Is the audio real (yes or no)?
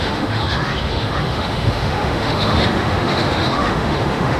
no